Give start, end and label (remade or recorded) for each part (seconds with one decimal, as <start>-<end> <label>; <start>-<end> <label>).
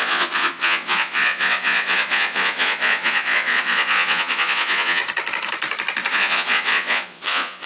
0.0-5.0 remade; 5.0-6.1 recorded; 6.1-7.7 remade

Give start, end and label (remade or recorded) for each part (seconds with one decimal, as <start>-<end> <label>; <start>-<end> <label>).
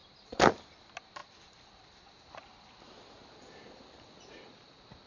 0.0-5.1 recorded